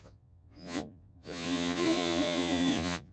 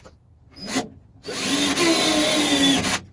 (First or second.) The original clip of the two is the second